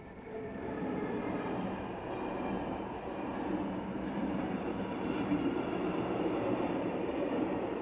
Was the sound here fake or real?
fake